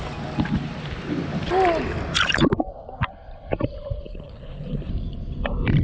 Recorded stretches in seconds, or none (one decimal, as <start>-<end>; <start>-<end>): 0.0-4.1; 4.9-5.8